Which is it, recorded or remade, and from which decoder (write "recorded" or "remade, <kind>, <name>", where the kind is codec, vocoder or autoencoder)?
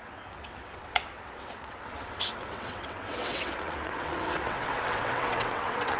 remade, vocoder, WaveNeXt